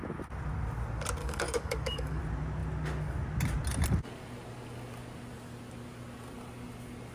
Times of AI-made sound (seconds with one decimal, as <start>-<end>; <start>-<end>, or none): 1.2-2.2